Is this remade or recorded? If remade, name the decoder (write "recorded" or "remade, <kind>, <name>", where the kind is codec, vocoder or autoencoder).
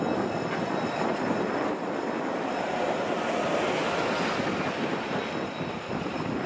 recorded